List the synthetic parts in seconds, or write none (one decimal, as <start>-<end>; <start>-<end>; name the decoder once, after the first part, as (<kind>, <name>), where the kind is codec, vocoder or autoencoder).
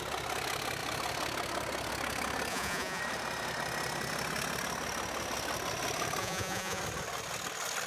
2.5-3.0 (vocoder, Vocos); 6.2-6.8